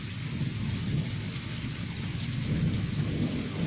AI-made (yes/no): no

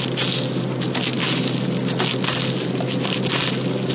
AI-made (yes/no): no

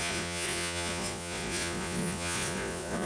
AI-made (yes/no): yes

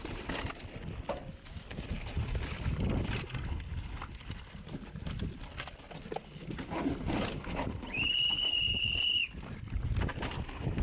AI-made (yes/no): no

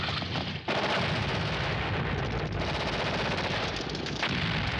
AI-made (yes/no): no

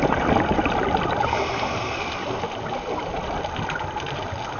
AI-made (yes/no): no